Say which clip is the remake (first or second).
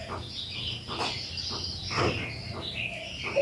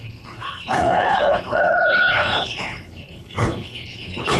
second